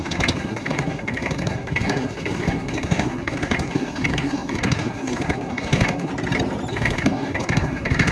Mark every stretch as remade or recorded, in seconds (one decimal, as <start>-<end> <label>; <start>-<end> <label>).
0.0-6.1 remade; 6.1-6.7 recorded; 6.7-8.1 remade